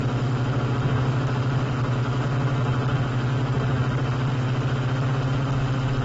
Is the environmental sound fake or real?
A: real